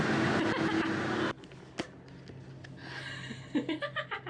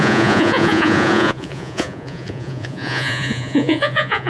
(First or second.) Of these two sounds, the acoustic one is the first